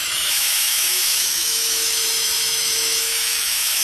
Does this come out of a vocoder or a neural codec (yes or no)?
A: yes